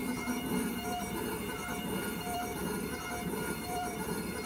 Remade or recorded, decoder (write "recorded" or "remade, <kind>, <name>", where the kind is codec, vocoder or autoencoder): remade, vocoder, BigVGAN v2